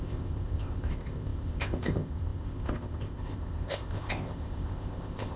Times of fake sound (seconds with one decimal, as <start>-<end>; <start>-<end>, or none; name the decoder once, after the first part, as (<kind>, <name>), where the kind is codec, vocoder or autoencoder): 0.0-5.4 (codec, ZipCodec)